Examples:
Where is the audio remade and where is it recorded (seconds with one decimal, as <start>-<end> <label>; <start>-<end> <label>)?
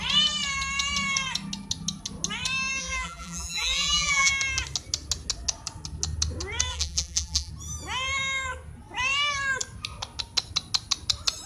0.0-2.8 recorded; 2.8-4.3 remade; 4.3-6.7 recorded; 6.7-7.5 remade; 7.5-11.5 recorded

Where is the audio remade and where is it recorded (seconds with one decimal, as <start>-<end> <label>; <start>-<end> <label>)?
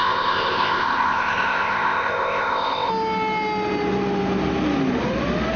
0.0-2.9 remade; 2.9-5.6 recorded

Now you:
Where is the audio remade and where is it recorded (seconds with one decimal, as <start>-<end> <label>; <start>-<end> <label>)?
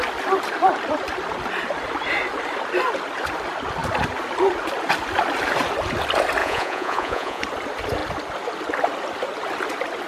0.0-6.4 recorded; 6.4-7.4 remade; 7.4-10.1 recorded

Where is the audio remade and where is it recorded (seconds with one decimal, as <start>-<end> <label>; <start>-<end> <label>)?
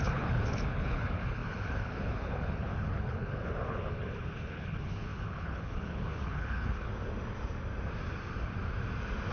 0.0-6.9 remade; 6.9-9.3 recorded